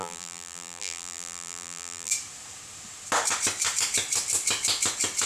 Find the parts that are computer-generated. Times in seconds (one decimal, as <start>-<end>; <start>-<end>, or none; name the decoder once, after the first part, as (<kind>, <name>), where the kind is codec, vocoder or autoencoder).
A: 0.0-2.1 (vocoder, BigVGAN v2)